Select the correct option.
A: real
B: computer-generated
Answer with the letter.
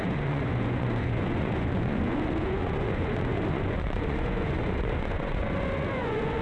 B